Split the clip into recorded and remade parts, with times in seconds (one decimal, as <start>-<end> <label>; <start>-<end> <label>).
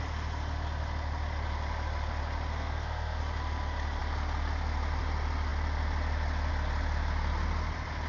0.0-2.5 recorded; 2.5-3.2 remade; 3.2-8.1 recorded